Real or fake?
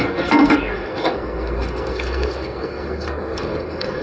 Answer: fake